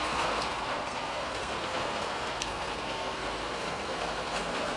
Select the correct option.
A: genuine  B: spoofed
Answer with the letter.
B